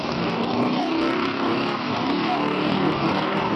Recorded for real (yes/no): no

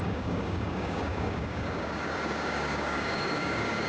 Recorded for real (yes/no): no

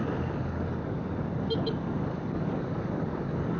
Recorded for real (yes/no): no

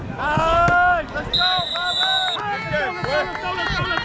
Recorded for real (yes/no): yes